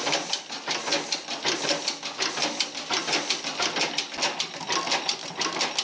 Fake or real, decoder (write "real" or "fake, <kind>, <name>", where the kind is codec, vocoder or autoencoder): real